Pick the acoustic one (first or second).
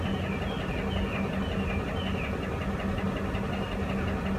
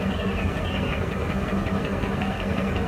first